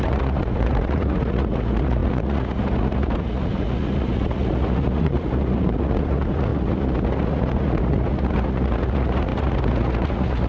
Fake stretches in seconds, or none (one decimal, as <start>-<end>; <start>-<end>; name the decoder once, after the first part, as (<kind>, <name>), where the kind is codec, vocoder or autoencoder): 0.0-10.5 (vocoder, Vocos)